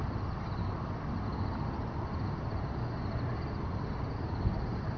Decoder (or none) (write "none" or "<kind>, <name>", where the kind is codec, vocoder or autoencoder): none